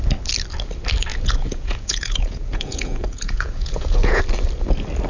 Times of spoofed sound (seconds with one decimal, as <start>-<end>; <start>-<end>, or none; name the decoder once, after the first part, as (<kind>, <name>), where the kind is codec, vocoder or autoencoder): 1.1-4.2 (vocoder, Vocos)